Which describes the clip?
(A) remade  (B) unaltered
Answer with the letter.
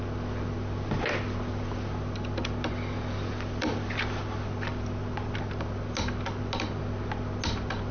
B